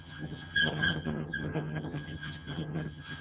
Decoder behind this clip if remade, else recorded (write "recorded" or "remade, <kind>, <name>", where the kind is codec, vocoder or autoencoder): remade, vocoder, HiFi-GAN